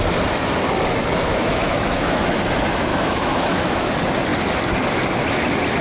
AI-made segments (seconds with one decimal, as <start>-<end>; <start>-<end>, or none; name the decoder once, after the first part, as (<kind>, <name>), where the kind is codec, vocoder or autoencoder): 1.3-2.4 (autoencoder, DAC-VAE); 2.9-3.9